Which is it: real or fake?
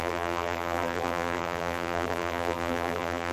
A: fake